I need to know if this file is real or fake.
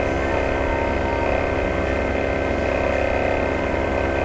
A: real